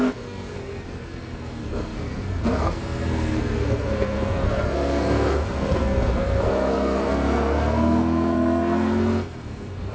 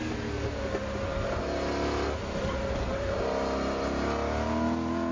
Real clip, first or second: second